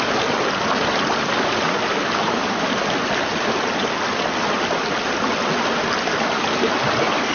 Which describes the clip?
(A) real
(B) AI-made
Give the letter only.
A